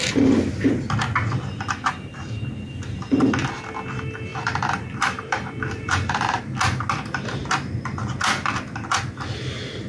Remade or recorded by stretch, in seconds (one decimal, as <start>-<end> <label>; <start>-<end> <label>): 0.0-4.3 recorded; 4.3-6.4 remade; 6.4-9.9 recorded